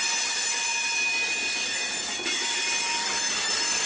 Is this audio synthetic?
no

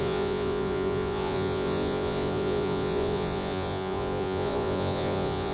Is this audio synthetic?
yes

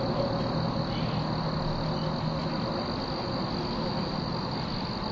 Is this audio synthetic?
no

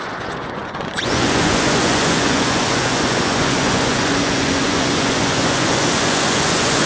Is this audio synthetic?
yes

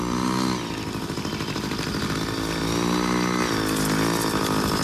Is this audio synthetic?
no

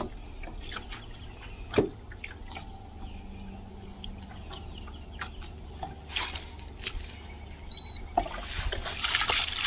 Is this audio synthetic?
no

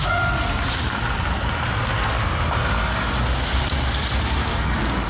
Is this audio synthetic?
no